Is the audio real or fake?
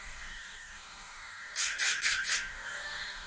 fake